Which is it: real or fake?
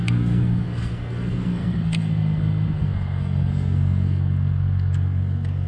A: fake